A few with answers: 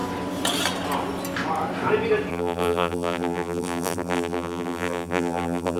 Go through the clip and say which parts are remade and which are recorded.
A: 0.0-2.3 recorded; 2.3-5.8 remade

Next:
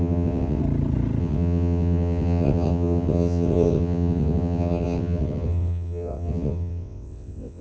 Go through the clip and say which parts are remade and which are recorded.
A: 0.0-0.6 remade; 0.6-1.2 recorded; 1.2-7.6 remade